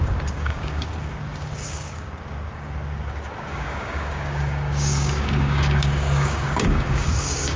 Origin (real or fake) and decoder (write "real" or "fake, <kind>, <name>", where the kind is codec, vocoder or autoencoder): fake, codec, DAC